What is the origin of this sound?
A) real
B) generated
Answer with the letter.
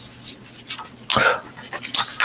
A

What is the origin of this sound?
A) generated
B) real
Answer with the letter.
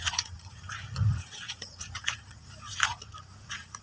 A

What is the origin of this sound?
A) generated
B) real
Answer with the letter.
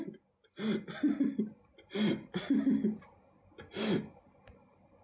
B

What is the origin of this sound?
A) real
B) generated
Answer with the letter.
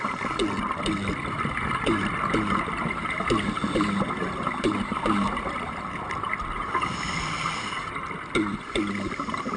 A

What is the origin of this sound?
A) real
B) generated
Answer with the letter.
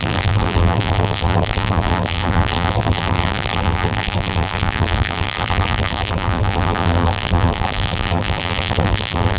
B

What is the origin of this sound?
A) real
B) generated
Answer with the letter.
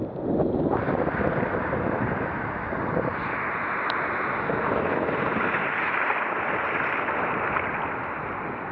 A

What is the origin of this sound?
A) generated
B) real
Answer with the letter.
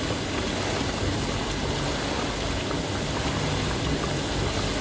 B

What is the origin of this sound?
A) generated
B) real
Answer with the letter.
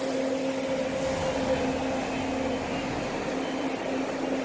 B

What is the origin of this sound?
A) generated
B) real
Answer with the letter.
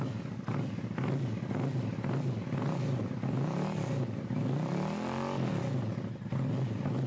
B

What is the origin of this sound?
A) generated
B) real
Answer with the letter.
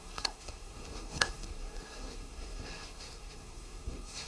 A